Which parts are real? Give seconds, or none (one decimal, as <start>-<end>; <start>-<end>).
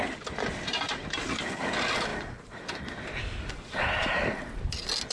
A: 0.0-5.1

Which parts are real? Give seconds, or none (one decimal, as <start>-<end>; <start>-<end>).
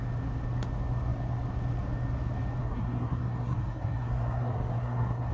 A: 0.0-2.6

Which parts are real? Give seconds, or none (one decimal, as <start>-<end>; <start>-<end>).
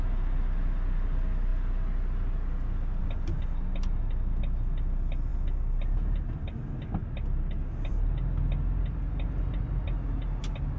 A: 0.0-10.8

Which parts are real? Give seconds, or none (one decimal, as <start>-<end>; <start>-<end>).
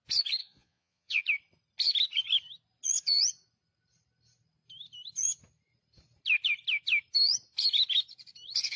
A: 0.0-0.4; 1.2-8.8